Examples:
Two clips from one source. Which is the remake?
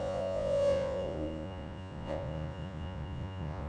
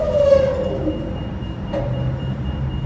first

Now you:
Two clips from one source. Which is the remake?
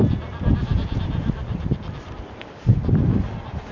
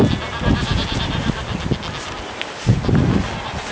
first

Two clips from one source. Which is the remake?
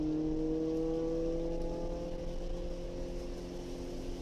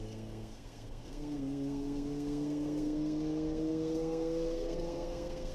second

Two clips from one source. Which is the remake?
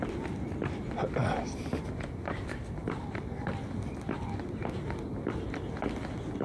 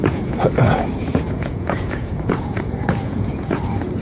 second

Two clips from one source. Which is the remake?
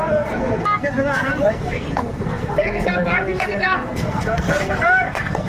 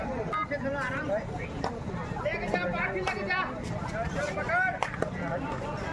first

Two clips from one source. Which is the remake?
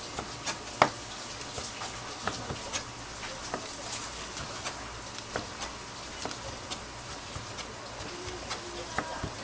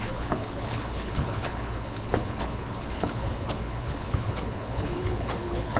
second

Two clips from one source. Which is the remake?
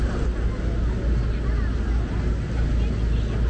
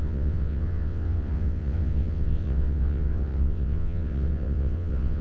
second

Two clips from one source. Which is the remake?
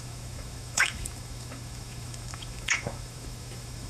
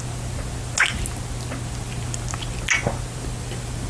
first